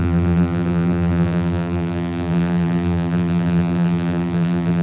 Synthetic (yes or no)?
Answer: yes